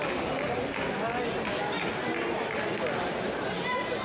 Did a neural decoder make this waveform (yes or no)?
no